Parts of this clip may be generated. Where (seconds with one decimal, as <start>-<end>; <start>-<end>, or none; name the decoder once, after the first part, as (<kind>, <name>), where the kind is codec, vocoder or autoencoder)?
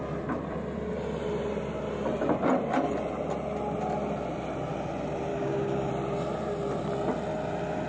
5.3-5.9 (codec, DAC)